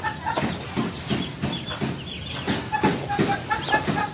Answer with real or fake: fake